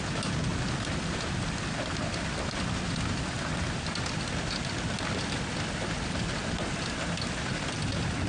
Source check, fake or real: real